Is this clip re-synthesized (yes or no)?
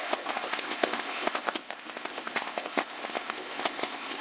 yes